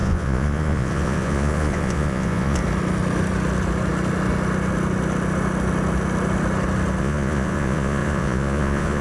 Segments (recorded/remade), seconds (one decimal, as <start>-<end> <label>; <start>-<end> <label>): 0.0-2.6 remade; 2.6-7.0 recorded; 7.0-9.0 remade